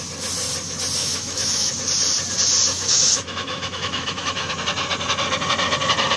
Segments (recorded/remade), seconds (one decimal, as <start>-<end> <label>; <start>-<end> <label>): 0.0-1.0 recorded; 1.0-1.7 remade; 1.7-2.7 recorded; 2.7-4.5 remade; 4.5-6.2 recorded